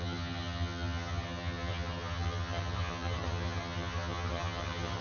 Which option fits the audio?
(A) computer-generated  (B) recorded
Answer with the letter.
A